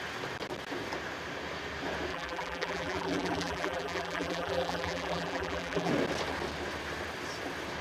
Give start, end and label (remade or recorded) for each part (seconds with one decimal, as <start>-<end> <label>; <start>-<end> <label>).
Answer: 0.0-2.1 recorded; 2.1-5.9 remade; 5.9-7.8 recorded